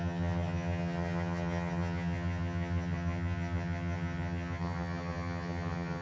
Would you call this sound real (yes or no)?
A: no